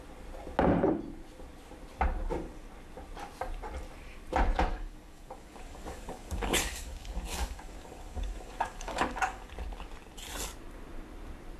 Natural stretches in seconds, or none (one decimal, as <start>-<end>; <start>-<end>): 0.0-4.7; 9.5-11.6